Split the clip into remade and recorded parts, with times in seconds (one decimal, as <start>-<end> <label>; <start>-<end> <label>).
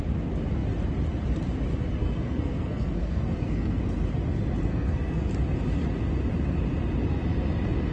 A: 0.0-2.0 recorded; 2.0-3.8 remade; 3.8-4.7 recorded; 4.7-5.3 remade; 5.3-7.9 recorded